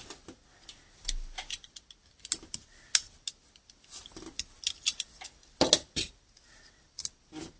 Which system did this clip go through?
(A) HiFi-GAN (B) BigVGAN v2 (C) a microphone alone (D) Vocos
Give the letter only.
C